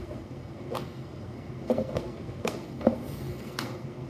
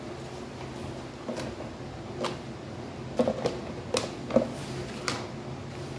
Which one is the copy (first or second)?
first